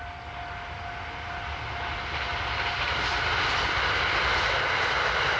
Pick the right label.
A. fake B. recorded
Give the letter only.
B